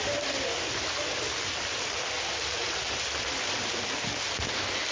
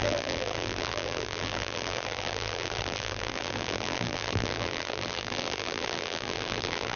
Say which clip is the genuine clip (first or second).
first